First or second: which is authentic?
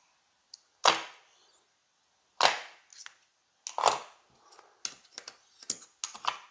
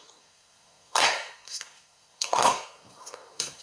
first